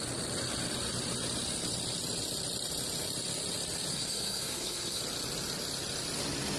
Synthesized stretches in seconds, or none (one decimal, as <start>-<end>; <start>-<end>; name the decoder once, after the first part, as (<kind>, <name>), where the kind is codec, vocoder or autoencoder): 3.9-5.0 (codec, SNAC)